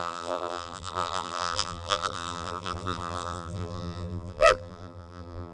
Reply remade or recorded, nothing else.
remade